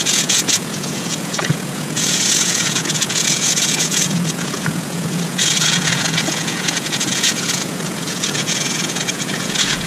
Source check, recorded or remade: remade